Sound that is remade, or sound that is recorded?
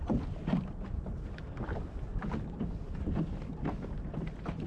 recorded